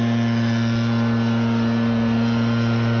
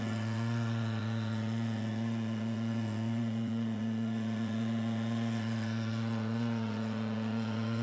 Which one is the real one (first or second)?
first